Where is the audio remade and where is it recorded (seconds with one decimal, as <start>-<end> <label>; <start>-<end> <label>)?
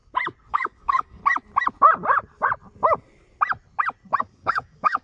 0.0-0.5 recorded; 0.5-1.2 remade; 1.2-4.2 recorded; 4.2-5.0 remade